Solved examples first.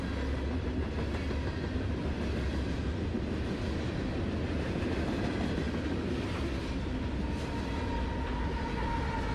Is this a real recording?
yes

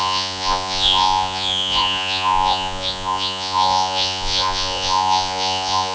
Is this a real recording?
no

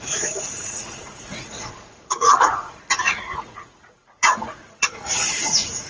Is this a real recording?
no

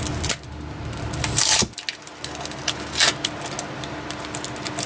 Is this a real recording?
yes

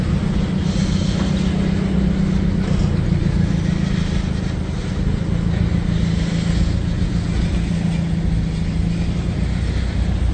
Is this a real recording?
yes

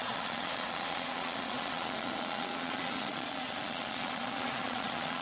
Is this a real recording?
no